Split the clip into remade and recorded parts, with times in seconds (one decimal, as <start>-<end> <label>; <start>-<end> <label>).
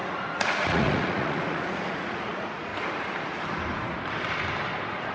0.0-2.7 remade; 2.7-5.1 recorded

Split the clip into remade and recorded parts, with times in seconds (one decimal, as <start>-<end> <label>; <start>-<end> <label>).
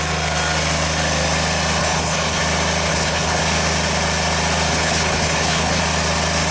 0.0-1.8 recorded; 1.8-2.4 remade; 2.4-2.9 recorded; 2.9-3.4 remade; 3.4-4.7 recorded; 4.7-5.8 remade; 5.8-6.5 recorded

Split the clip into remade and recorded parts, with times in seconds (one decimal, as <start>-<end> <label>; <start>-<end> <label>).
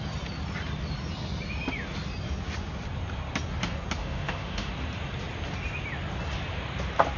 0.0-4.0 recorded; 4.0-4.7 remade; 4.7-7.2 recorded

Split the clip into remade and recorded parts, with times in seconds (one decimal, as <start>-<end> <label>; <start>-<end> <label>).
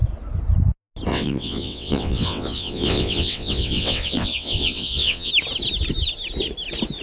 0.0-1.1 recorded; 1.1-5.3 remade; 5.3-7.0 recorded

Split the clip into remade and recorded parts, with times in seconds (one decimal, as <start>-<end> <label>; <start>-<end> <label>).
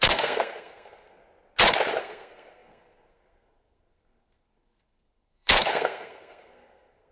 0.0-1.2 remade; 1.2-2.0 recorded; 2.0-7.1 remade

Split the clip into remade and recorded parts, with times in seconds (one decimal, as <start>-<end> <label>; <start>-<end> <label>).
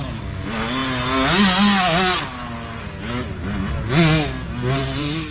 0.0-4.8 recorded; 4.8-5.3 remade